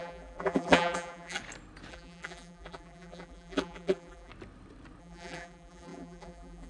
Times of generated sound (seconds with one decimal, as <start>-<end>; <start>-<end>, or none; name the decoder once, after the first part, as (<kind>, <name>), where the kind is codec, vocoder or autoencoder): 0.0-1.4 (vocoder, BigVGAN v2); 1.9-4.3; 5.0-6.7